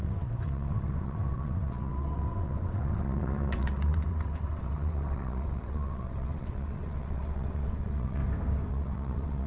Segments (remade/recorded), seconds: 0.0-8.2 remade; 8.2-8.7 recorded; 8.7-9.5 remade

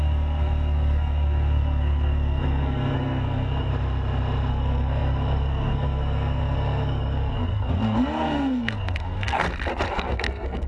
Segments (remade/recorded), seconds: 0.0-3.7 remade; 3.7-4.5 recorded; 4.5-9.4 remade; 9.4-9.9 recorded; 9.9-10.7 remade

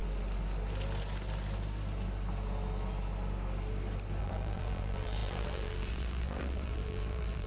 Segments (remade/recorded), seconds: 0.0-4.2 recorded; 4.2-7.5 remade

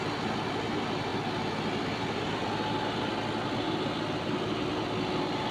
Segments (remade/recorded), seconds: 0.0-5.5 recorded

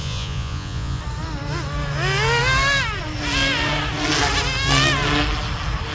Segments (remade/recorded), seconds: 0.0-1.0 remade; 1.0-5.9 recorded